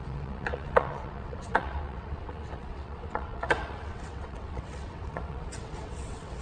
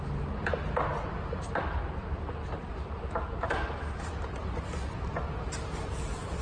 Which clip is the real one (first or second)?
second